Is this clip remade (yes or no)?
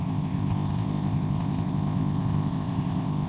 yes